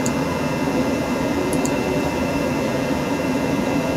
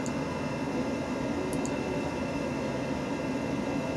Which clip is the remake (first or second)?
first